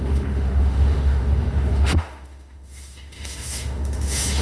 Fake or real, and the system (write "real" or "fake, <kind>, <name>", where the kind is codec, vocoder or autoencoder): fake, autoencoder, DAC-VAE